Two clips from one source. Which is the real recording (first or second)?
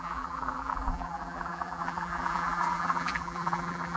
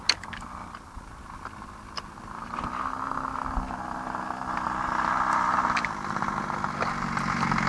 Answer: second